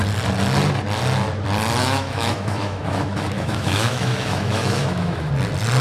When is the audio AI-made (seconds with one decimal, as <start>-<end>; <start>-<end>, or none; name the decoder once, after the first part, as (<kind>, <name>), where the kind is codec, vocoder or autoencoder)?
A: 1.8-5.3 (autoencoder, DAC-VAE)